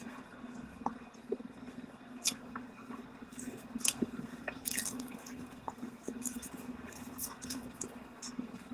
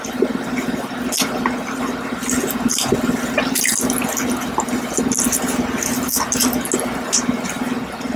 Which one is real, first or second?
second